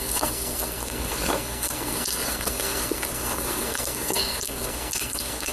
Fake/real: fake